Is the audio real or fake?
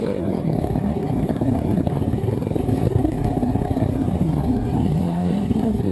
fake